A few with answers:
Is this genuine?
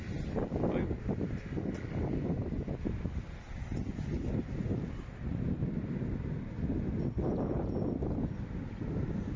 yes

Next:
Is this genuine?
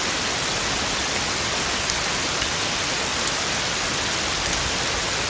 yes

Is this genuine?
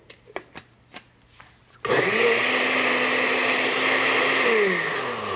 yes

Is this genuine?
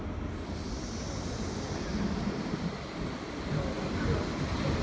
yes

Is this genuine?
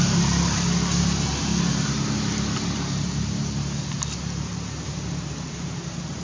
yes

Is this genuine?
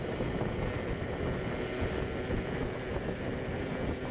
yes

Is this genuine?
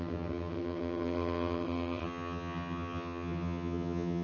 no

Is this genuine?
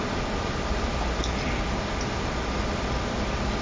yes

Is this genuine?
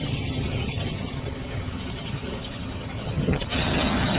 no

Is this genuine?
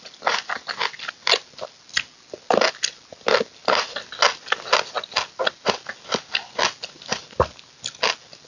yes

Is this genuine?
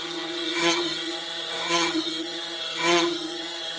no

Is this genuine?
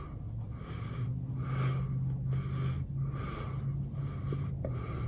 yes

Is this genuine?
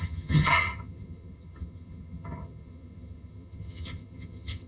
no